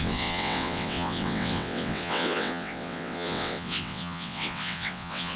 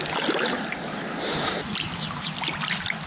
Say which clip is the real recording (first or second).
second